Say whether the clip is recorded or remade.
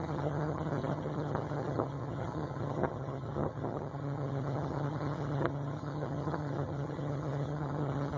remade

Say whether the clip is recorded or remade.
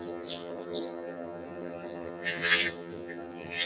remade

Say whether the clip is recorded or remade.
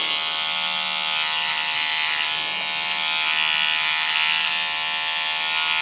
recorded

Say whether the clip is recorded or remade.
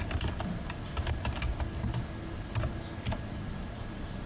recorded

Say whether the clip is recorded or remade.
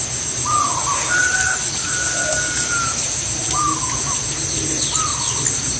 recorded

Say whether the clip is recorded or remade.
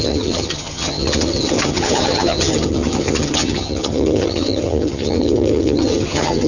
remade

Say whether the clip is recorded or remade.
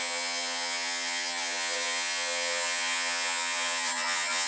remade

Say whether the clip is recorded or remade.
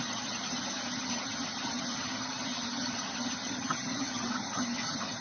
remade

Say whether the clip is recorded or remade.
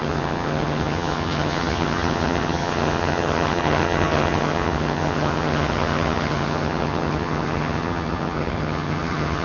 remade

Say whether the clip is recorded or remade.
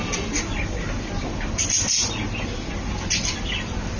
recorded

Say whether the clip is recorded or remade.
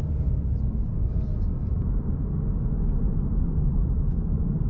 recorded